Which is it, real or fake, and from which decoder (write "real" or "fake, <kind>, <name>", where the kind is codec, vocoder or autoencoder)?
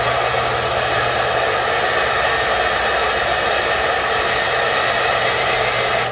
real